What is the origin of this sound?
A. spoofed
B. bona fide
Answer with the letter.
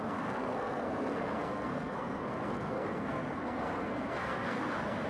A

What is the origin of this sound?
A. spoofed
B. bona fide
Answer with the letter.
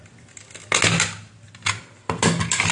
B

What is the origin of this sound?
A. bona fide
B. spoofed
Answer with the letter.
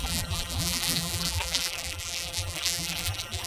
B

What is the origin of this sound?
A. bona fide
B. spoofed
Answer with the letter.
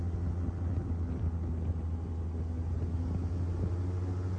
A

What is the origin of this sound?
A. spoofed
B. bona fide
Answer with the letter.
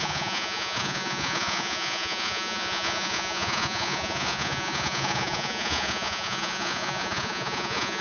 A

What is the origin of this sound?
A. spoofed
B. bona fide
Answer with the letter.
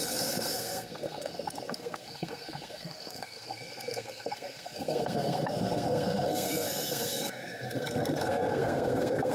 A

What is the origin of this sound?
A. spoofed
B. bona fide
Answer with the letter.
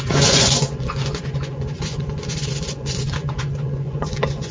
A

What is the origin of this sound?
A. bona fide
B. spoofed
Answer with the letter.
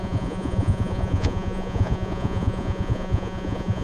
B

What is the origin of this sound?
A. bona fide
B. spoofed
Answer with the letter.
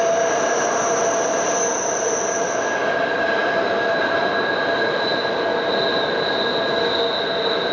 A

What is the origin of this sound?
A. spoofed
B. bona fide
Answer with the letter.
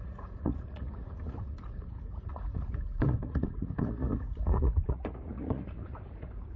A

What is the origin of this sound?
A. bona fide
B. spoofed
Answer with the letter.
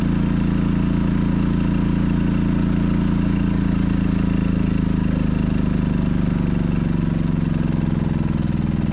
A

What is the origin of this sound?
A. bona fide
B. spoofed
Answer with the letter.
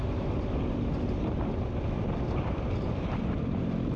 A